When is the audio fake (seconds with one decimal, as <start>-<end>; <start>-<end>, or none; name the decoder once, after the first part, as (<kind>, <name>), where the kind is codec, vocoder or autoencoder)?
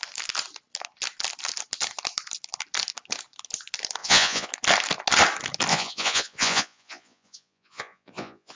4.0-4.5 (vocoder, Vocos); 5.7-8.6